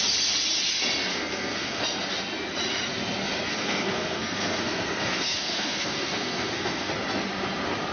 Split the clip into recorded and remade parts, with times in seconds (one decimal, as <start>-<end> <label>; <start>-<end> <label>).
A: 0.0-1.1 recorded; 1.1-1.8 remade; 1.8-3.5 recorded; 3.5-6.9 remade; 6.9-7.9 recorded